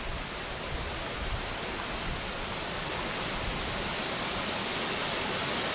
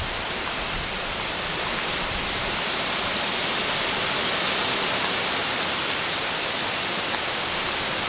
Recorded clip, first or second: first